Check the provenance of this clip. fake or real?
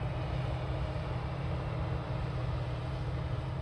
fake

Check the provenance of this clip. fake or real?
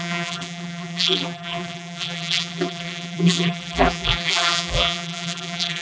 fake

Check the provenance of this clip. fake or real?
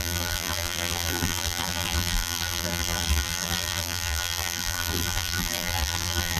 fake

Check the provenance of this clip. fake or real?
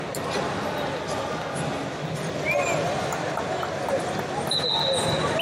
real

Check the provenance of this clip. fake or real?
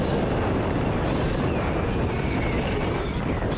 real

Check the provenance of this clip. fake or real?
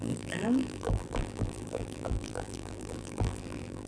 fake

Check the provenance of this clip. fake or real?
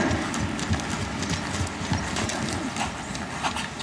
real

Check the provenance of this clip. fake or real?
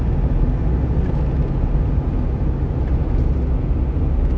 real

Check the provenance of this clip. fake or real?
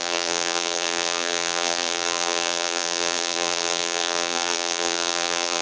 fake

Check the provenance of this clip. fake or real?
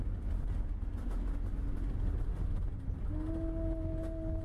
real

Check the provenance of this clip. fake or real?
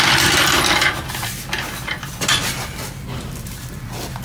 fake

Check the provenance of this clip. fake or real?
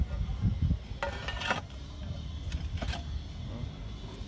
real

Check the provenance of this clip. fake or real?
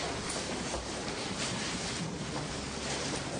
fake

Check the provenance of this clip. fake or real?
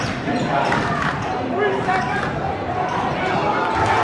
real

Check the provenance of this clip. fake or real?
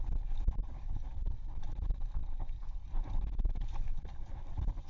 real